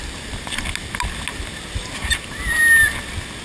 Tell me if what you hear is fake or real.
real